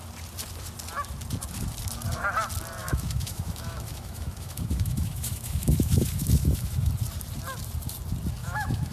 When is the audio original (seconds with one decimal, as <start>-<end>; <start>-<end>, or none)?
0.0-2.8; 6.9-8.4